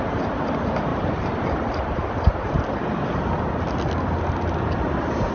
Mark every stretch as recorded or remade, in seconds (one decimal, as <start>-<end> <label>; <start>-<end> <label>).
0.0-0.9 recorded; 0.9-2.6 remade; 2.6-5.3 recorded